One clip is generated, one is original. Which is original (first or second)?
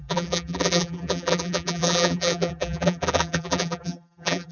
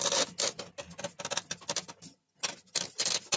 second